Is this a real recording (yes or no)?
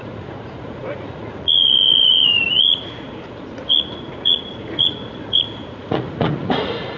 no